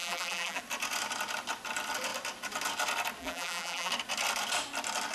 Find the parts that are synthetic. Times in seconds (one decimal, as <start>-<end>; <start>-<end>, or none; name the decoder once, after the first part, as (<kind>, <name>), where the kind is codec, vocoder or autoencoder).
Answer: 0.0-0.6 (vocoder, BigVGAN v2); 3.2-3.9